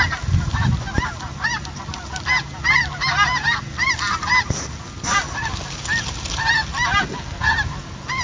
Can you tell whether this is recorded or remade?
recorded